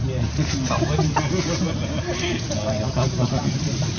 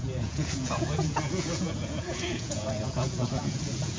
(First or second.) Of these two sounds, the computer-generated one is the second